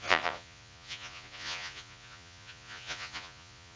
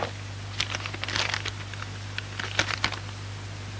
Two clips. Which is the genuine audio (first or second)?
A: second